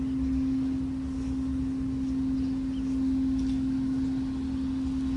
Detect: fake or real real